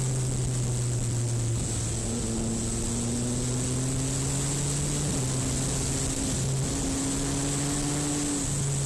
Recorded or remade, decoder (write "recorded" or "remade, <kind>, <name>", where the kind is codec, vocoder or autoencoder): recorded